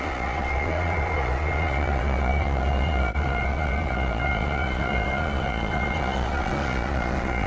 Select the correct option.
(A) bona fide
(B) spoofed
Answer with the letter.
B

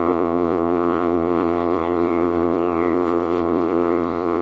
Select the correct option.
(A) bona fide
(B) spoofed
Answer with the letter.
B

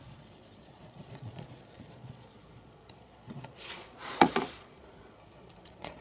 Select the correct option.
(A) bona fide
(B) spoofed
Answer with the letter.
B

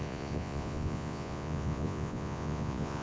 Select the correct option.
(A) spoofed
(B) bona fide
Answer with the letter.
A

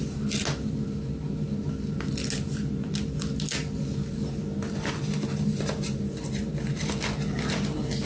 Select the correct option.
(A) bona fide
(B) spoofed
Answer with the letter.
A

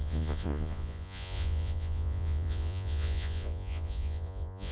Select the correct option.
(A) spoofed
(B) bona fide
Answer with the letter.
A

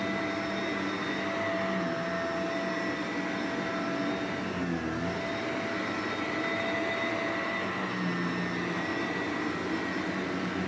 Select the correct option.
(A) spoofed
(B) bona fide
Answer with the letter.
B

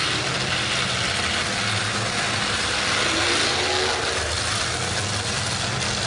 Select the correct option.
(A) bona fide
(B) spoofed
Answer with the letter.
A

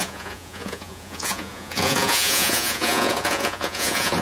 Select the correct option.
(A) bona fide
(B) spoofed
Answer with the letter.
B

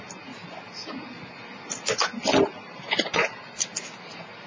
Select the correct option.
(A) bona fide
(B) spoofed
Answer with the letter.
A